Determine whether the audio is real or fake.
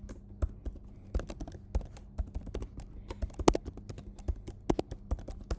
real